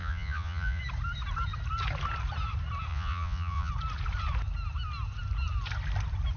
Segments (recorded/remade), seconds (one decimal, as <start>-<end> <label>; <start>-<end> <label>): 0.0-0.8 remade; 0.8-2.9 recorded; 2.9-3.7 remade; 3.7-6.4 recorded